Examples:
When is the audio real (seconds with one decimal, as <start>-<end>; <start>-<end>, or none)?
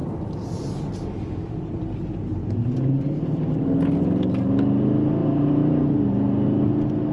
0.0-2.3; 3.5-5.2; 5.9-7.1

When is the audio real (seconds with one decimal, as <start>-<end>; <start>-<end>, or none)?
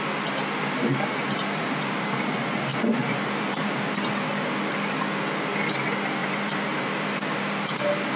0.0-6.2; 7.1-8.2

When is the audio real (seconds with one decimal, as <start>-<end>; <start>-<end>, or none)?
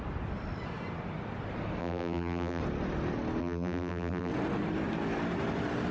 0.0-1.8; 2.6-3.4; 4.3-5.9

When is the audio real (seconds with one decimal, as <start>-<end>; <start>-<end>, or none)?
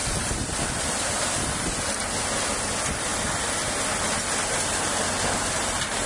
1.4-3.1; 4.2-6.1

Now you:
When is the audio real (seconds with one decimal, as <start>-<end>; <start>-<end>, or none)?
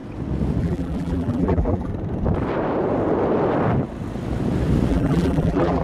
0.0-0.6; 1.9-4.9